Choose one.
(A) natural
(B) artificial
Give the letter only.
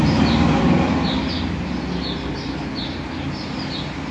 A